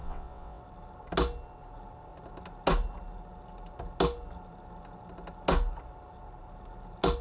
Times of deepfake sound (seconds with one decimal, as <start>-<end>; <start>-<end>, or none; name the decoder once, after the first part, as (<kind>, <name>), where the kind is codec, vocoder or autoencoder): 0.0-0.6 (vocoder, WaveNeXt)